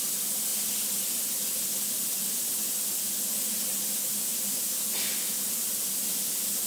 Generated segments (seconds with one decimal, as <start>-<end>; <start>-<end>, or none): none

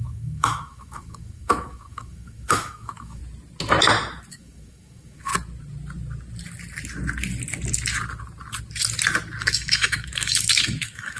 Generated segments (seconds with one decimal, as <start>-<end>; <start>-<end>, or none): 0.0-3.2; 4.3-5.3; 9.4-11.2

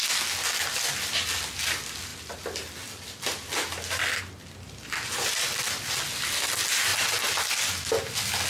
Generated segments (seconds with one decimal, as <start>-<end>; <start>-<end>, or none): none